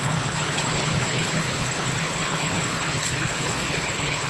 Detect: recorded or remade remade